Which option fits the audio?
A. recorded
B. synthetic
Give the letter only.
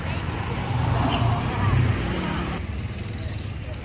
A